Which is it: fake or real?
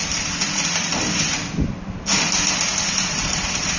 real